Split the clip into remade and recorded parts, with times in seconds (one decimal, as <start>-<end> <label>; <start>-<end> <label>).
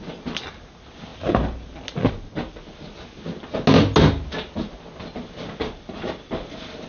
0.0-6.9 recorded